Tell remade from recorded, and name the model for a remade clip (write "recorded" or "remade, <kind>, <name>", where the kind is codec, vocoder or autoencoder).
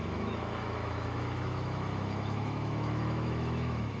remade, autoencoder, DAC-VAE